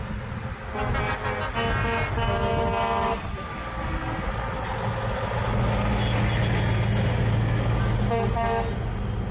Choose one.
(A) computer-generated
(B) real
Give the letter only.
B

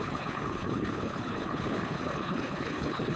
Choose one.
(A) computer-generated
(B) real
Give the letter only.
A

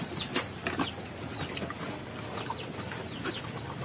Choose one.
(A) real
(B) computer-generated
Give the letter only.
A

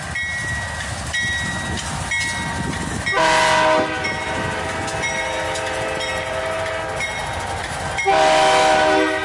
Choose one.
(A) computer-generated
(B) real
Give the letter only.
B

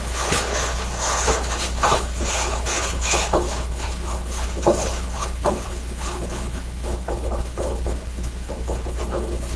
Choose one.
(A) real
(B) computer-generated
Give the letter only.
B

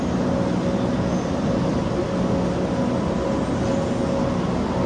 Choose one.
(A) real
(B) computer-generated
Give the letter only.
A